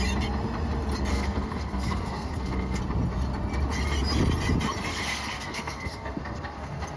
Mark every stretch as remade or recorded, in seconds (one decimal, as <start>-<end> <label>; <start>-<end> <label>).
0.0-1.1 recorded; 1.1-2.8 remade; 2.8-4.9 recorded; 4.9-7.0 remade